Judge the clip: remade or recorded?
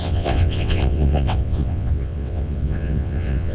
remade